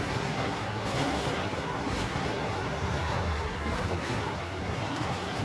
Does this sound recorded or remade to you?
remade